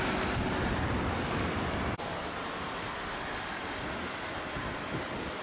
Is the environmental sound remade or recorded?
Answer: recorded